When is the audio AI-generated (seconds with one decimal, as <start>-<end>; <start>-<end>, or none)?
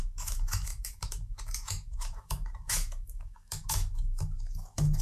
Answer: 0.0-5.0